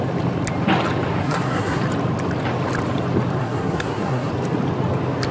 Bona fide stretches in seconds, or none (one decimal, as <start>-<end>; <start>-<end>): 0.0-1.2; 1.8-3.4; 4.3-5.3